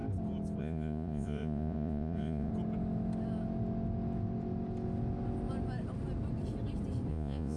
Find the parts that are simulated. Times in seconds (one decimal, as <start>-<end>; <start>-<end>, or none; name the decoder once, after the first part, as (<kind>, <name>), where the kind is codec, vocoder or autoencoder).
0.6-2.5 (vocoder, Vocos); 7.1-7.6